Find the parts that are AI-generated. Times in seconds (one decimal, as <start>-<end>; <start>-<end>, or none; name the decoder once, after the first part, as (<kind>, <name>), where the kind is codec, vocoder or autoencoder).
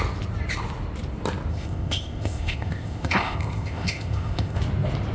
1.5-4.6 (codec, ZipCodec)